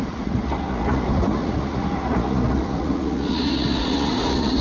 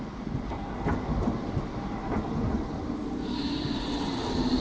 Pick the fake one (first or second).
first